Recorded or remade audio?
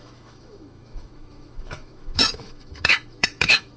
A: remade